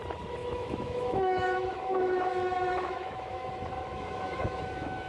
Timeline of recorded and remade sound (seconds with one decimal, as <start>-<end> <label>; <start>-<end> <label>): 0.0-0.4 recorded; 0.4-3.5 remade; 3.5-3.9 recorded; 3.9-5.1 remade